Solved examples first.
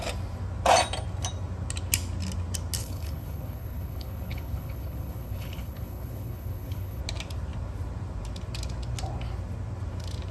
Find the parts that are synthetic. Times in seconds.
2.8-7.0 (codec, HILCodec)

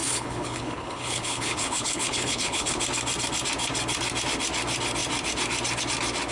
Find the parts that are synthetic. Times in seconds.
0.0-2.8 (codec, HILCodec)

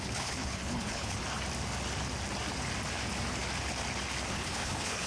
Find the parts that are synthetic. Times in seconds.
0.0-1.2 (codec, HILCodec); 4.3-5.1

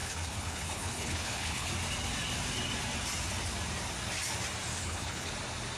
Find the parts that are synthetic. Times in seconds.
0.0-1.7 (codec, HILCodec); 4.7-5.3

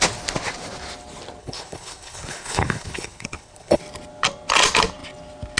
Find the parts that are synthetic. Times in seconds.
1.4-3.8 (codec, HILCodec)

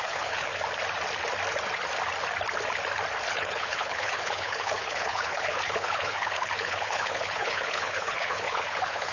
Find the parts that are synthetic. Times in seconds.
0.0-0.5 (codec, HILCodec); 3.3-9.1